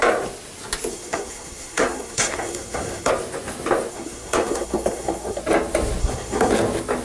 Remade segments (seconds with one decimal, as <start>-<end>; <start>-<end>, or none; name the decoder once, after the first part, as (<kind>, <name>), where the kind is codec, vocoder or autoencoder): 0.9-3.1 (codec, SNAC); 3.9-5.4; 6.0-6.5